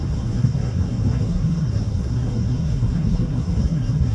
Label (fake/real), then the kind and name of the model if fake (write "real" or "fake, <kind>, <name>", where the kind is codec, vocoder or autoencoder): fake, codec, SNAC